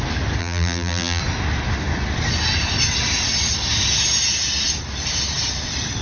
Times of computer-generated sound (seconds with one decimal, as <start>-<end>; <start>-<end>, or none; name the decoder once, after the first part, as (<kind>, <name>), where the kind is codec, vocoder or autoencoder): 0.4-1.2 (vocoder, BigVGAN v2)